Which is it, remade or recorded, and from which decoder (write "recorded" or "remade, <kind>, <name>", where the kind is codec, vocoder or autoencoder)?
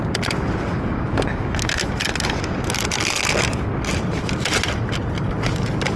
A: recorded